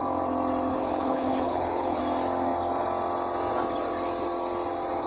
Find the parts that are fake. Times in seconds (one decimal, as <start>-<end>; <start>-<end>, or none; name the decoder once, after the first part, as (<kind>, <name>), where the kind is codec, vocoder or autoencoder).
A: 0.7-2.0 (codec, HILCodec)